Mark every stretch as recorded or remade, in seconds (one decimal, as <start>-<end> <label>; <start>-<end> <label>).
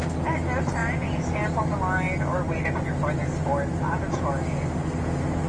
0.0-5.5 recorded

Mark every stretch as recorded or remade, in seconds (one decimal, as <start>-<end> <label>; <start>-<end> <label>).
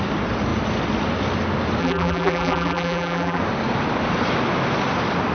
0.0-1.8 recorded; 1.8-3.4 remade; 3.4-5.3 recorded